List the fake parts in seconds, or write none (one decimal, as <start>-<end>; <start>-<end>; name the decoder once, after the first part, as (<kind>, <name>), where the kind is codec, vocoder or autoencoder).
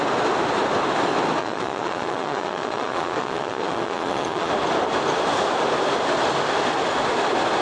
1.4-4.5 (vocoder, Vocos)